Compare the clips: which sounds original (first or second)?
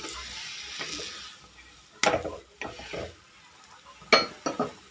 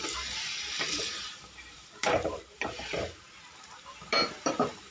first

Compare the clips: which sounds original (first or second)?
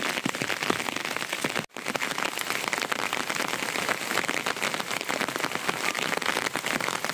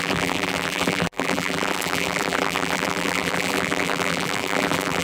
first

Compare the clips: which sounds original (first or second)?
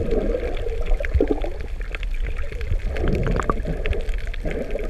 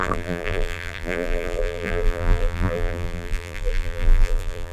first